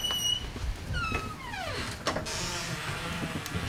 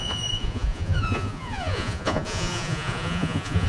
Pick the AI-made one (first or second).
second